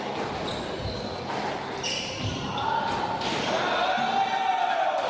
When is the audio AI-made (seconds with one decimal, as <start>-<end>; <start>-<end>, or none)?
none